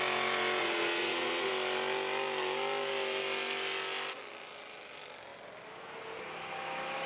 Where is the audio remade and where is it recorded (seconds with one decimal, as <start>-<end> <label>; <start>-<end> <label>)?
0.0-0.6 recorded; 0.6-1.5 remade; 1.5-7.1 recorded